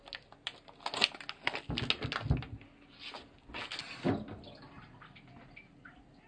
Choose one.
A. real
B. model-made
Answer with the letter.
A